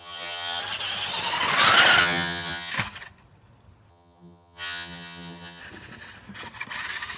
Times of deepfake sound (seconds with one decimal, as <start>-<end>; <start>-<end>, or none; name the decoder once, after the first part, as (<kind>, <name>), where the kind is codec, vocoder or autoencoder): 0.0-0.6 (vocoder, HiFi-GAN); 2.0-2.7; 3.9-5.6